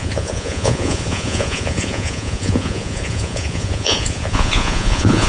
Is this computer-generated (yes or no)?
yes